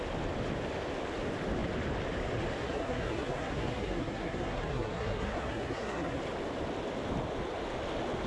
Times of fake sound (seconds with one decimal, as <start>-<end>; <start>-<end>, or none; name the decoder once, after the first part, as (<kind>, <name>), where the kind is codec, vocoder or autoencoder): 2.6-6.2 (codec, SNAC)